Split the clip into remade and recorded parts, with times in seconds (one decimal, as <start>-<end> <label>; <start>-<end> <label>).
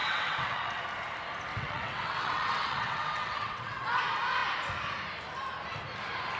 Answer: 0.0-0.8 remade; 0.8-1.5 recorded; 1.5-4.0 remade; 4.0-6.4 recorded